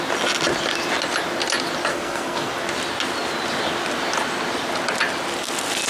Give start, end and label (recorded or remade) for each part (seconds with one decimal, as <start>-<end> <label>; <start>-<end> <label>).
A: 0.0-1.9 recorded; 1.9-2.5 remade; 2.5-5.9 recorded